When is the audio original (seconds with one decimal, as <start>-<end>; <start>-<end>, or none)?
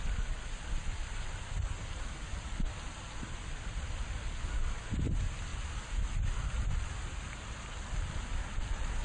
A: 0.0-9.0